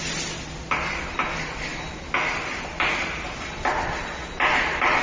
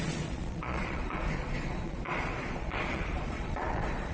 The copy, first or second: second